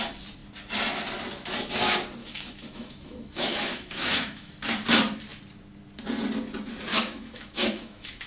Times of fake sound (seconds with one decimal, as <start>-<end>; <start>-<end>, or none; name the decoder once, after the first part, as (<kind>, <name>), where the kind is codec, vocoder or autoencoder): 2.2-4.5 (autoencoder, DAC-VAE); 6.9-8.3